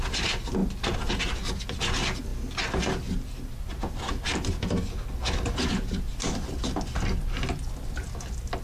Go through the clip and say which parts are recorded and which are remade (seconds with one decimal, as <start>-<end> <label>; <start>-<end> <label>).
0.0-8.6 recorded